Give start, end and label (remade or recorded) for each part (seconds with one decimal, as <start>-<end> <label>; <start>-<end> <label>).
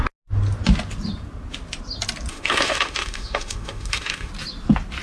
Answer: 0.0-2.3 recorded; 2.3-4.3 remade; 4.3-5.0 recorded